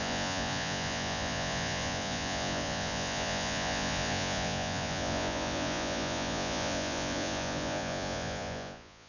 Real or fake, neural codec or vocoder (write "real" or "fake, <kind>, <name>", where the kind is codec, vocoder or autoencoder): fake, vocoder, Vocos